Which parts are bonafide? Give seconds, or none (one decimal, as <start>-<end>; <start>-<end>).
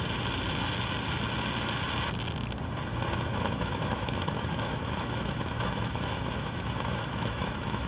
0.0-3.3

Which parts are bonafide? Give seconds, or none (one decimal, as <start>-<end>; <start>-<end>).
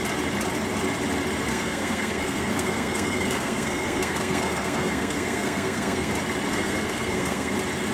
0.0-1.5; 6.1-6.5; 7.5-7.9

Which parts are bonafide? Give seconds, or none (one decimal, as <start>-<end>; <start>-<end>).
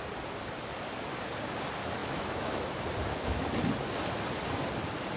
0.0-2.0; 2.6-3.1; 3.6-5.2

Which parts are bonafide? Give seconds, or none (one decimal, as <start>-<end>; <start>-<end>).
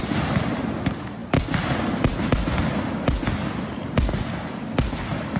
0.0-5.4